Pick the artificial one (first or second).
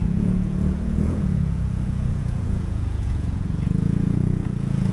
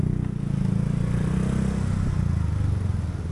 first